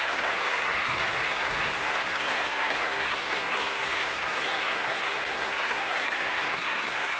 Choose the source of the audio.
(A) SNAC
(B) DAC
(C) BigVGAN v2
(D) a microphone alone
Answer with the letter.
A